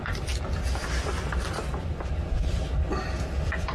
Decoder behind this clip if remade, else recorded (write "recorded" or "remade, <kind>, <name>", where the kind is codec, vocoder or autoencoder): recorded